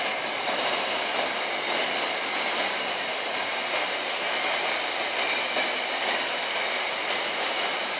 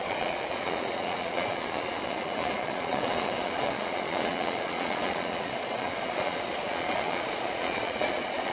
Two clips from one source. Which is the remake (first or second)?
second